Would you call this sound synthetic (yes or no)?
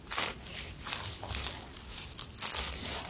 no